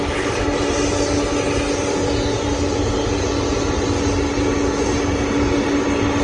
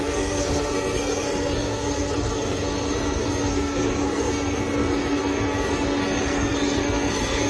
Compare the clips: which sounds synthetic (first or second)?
second